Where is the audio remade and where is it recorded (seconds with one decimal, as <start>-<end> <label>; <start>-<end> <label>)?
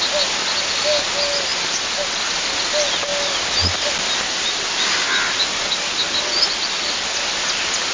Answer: 0.0-7.9 recorded